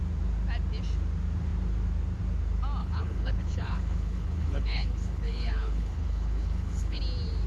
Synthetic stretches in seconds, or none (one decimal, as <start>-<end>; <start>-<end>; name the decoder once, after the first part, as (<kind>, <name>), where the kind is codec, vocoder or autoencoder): 2.8-7.0 (codec, HILCodec)